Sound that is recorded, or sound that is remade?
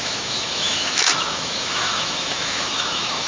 remade